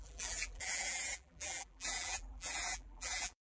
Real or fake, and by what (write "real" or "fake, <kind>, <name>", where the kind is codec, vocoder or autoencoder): fake, vocoder, BigVGAN v2